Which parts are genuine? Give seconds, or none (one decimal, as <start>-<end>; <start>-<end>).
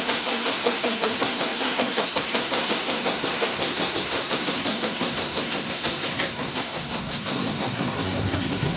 none